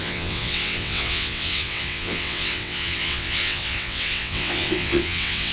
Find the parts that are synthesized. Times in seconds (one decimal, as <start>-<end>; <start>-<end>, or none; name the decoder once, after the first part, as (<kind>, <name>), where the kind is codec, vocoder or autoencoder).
0.0-5.5 (vocoder, WaveNeXt)